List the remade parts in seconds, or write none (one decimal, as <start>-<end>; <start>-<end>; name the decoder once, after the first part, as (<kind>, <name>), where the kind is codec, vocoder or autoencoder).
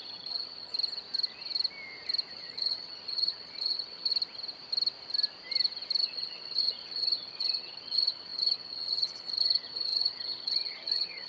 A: 0.0-0.7 (vocoder, HiFi-GAN); 2.3-4.1; 6.0-11.3